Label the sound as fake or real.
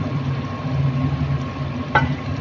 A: fake